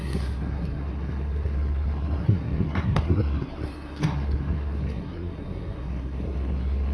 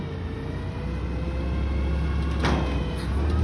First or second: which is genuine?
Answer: second